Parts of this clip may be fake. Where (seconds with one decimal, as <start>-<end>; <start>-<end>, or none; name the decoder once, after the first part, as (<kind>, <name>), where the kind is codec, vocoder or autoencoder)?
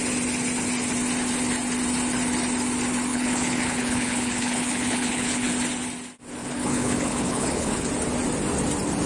3.1-5.5 (codec, HILCodec); 6.4-7.9